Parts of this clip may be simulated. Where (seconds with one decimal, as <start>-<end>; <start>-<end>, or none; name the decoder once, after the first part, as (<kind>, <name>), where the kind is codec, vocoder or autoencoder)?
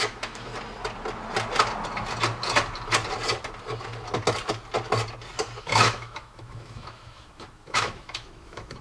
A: 0.0-0.5 (autoencoder, DAC-VAE); 5.6-8.8